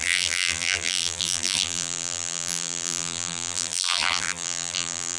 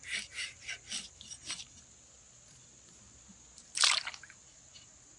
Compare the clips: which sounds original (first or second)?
second